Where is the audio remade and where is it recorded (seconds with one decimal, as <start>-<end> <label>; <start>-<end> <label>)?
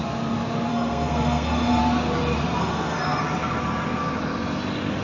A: 0.0-0.7 recorded; 0.7-1.8 remade; 1.8-2.6 recorded; 2.6-3.2 remade; 3.2-5.0 recorded